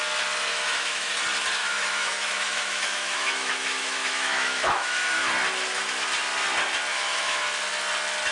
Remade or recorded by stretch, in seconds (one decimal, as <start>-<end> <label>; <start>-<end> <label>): 0.0-0.5 recorded; 0.5-1.1 remade; 1.1-1.6 recorded; 1.6-5.3 remade; 5.3-6.9 recorded; 6.9-7.4 remade; 7.4-8.3 recorded